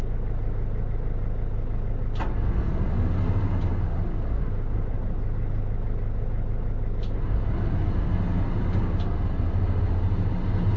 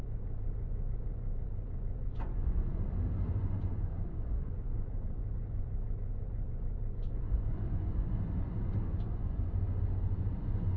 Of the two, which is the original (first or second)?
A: first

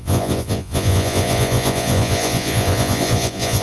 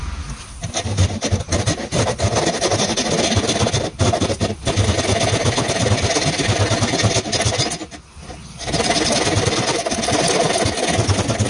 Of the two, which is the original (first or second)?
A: second